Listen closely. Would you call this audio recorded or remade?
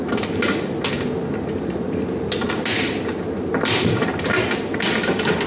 recorded